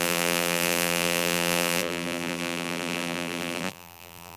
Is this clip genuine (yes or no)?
no